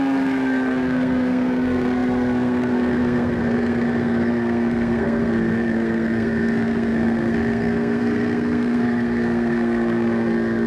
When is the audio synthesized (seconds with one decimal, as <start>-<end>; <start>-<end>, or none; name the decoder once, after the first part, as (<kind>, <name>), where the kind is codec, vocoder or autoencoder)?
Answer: 0.0-10.7 (codec, SNAC)